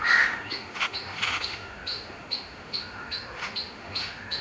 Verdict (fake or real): fake